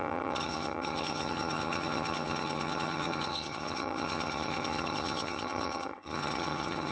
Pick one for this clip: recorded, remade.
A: remade